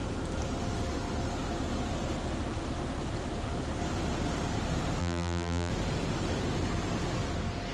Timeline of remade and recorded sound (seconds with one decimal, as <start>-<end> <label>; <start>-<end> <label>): 0.0-5.0 recorded; 5.0-5.7 remade; 5.7-7.7 recorded